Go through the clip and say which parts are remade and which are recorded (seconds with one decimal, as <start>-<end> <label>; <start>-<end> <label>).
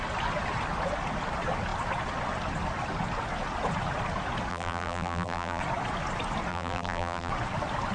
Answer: 0.0-4.5 recorded; 4.5-5.6 remade; 5.6-6.5 recorded; 6.5-7.3 remade; 7.3-7.9 recorded